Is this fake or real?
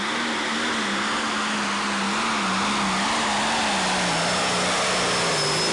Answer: real